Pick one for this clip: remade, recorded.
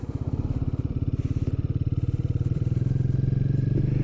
remade